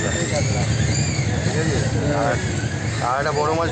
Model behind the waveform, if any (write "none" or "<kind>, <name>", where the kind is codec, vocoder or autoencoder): none